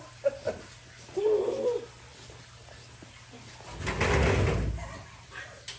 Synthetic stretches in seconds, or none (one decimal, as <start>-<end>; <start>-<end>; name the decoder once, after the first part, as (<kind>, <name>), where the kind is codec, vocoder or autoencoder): none